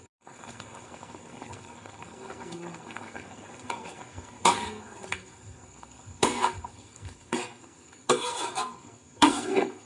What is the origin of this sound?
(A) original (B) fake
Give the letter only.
B